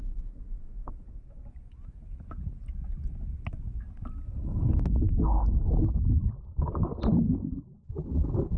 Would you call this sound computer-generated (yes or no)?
no